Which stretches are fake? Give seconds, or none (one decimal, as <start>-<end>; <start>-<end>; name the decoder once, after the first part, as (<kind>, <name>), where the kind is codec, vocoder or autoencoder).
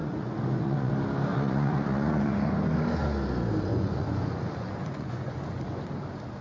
0.0-0.9 (vocoder, Vocos); 1.3-2.5; 3.7-5.9